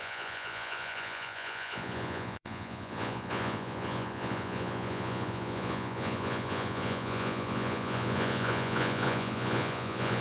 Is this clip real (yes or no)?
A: no